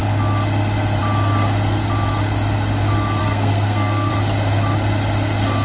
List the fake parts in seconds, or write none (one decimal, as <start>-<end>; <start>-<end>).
3.2-4.1